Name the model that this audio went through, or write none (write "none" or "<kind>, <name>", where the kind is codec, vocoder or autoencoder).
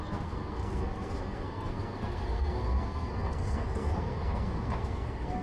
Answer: codec, SNAC